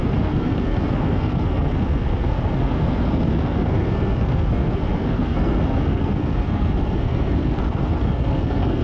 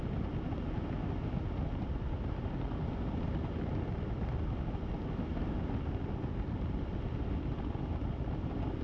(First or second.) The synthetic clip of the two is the first